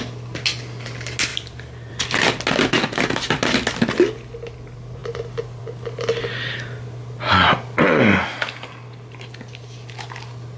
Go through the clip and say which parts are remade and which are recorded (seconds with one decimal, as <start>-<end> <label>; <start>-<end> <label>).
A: 0.0-1.3 recorded; 1.3-1.9 remade; 1.9-10.6 recorded